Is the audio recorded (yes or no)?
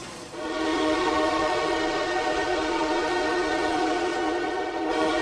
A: no